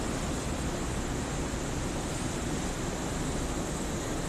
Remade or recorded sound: recorded